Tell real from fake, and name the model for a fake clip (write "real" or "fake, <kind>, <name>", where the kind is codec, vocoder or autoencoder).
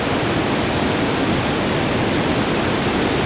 real